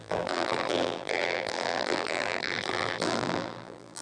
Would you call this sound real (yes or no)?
no